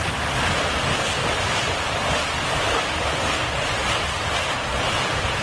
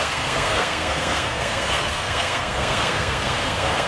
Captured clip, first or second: first